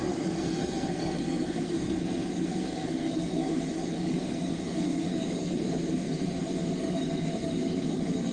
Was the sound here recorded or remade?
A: remade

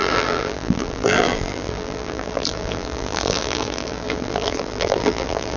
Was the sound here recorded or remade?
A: remade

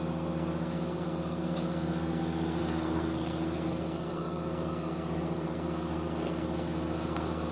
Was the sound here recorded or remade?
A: remade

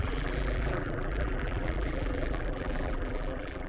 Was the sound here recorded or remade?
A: remade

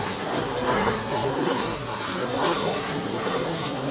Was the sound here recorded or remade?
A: remade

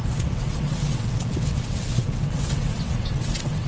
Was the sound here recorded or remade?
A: remade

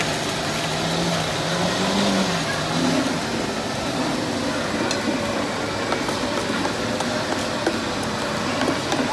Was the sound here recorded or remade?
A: recorded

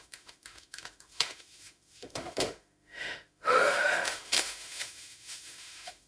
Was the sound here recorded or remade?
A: remade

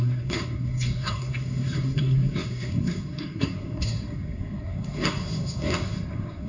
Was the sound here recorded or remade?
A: remade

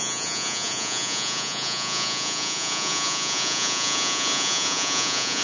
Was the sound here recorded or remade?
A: remade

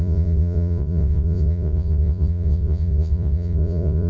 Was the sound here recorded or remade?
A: remade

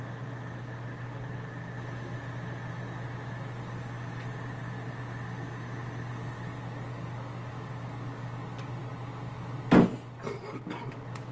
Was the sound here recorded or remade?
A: recorded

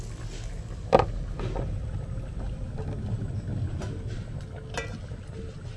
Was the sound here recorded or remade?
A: recorded